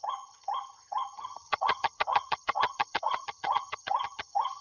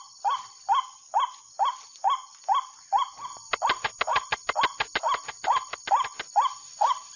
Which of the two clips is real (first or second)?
second